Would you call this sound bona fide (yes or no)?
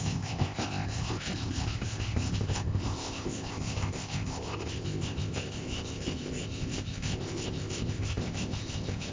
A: no